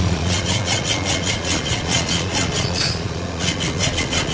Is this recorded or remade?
remade